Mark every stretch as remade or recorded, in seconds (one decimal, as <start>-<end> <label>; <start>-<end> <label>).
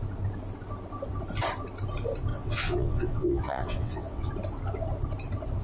0.0-2.3 recorded; 2.3-4.3 remade; 4.3-5.6 recorded